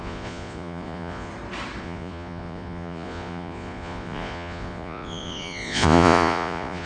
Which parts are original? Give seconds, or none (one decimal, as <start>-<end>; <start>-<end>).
1.3-1.8